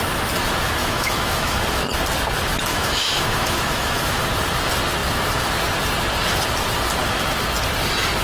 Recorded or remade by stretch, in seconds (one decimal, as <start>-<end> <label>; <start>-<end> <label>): 0.0-0.8 recorded; 0.8-1.6 remade; 1.6-2.7 recorded; 2.7-4.2 remade; 4.2-8.2 recorded